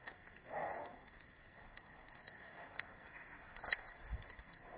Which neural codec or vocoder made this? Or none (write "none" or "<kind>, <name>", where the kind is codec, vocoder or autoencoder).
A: codec, SNAC